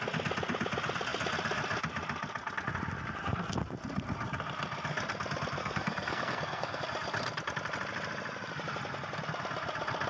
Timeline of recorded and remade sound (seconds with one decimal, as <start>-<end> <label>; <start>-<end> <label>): 0.0-5.6 recorded; 5.6-6.8 remade; 6.8-10.1 recorded